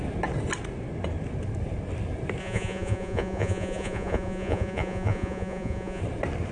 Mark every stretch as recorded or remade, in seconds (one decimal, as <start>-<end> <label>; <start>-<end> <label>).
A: 0.0-2.4 recorded; 2.4-6.0 remade; 6.0-6.5 recorded